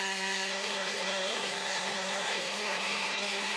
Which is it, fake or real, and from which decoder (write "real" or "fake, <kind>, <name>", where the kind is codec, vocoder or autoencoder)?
fake, codec, SNAC